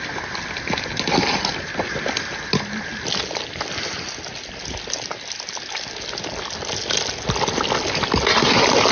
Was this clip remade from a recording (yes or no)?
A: no